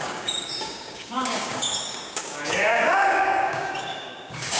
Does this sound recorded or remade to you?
remade